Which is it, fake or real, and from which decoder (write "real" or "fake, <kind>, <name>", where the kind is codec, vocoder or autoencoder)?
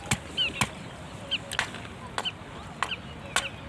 real